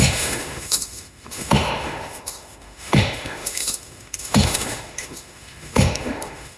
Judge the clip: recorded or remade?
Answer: remade